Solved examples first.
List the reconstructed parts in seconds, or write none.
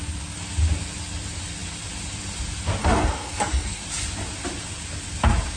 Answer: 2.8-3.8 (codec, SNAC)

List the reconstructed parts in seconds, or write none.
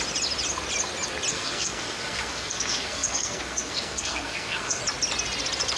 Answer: 1.3-4.8 (codec, SNAC)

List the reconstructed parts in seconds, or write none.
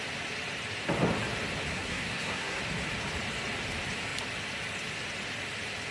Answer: 1.7-2.6 (codec, SNAC)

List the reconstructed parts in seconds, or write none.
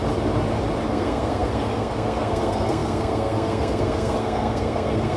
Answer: 0.9-5.2 (codec, SNAC)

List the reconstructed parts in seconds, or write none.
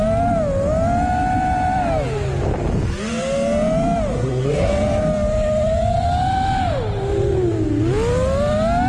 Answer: 4.1-4.7 (codec, SNAC)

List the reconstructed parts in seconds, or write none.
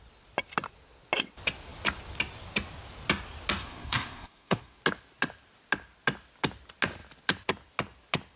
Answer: 3.6-4.8 (codec, SNAC)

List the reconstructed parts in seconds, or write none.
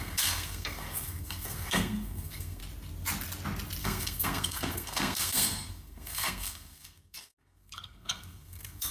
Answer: 0.0-2.6 (codec, SNAC); 3.8-8.9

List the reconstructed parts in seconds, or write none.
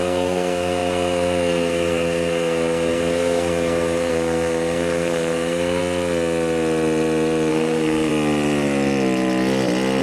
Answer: 0.0-5.8 (codec, SNAC); 7.5-8.1